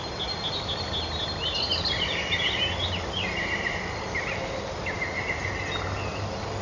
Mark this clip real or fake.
real